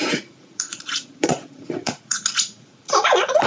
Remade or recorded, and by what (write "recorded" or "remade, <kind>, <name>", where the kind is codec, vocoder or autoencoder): remade, vocoder, Vocos